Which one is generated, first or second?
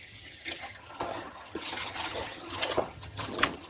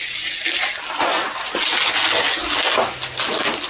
first